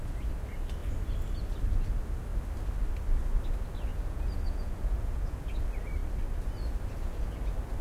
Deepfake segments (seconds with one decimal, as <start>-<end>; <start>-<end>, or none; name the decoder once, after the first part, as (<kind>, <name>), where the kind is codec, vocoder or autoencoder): 3.9-5.6 (vocoder, Vocos)